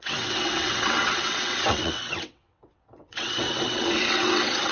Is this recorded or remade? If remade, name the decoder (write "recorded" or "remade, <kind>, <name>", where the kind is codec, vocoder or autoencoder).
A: remade, vocoder, WaveNeXt